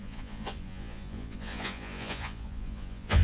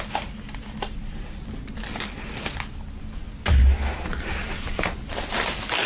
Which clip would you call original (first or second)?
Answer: second